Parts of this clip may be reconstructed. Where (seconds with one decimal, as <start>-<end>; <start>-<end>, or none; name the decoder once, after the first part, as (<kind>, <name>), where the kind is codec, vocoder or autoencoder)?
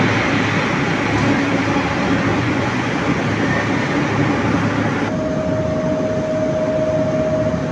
2.3-2.9 (vocoder, Vocos)